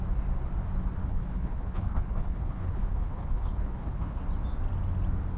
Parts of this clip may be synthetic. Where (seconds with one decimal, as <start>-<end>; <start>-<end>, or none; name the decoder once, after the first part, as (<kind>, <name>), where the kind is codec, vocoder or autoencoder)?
1.0-4.2 (codec, HILCodec)